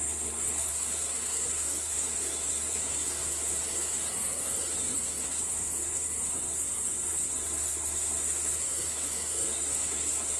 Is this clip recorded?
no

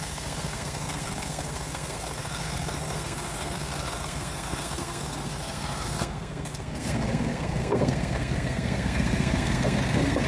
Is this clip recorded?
no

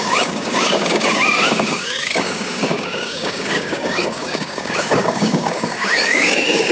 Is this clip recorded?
no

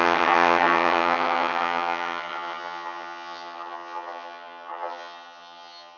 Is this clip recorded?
no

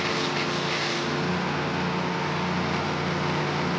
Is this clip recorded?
yes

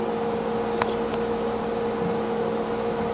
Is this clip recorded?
yes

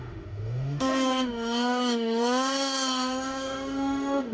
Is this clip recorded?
no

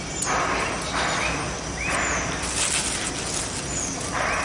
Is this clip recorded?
yes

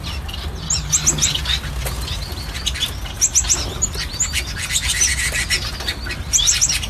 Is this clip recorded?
yes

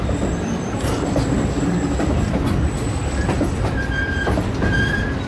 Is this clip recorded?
yes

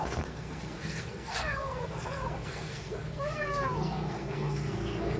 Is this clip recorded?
no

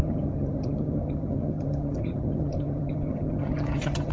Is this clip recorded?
no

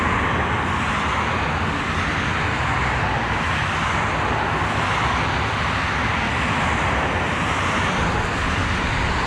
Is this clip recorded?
yes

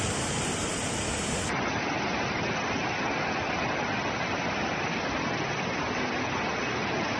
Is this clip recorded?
yes